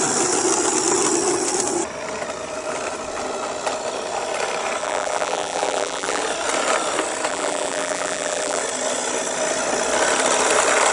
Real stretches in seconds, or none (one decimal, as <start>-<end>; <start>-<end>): 0.0-4.8; 6.2-7.3; 8.6-10.9